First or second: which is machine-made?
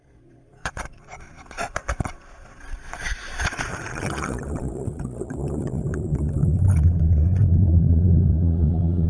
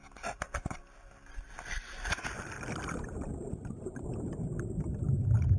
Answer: first